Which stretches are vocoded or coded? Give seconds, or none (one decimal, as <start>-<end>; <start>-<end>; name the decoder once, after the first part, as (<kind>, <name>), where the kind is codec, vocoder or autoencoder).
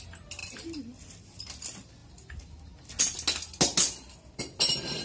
0.4-1.2 (vocoder, BigVGAN v2)